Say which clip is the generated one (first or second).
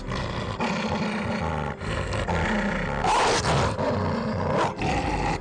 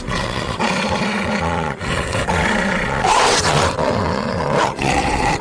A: second